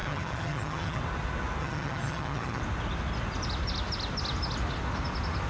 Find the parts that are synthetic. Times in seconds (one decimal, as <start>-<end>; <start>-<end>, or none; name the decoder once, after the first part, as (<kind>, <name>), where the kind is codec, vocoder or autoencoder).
0.0-1.0 (vocoder, HiFi-GAN); 1.6-2.6